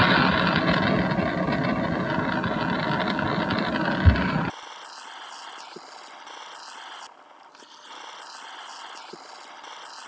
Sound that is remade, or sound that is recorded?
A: recorded